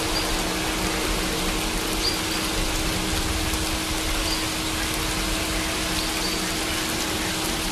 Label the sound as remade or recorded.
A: recorded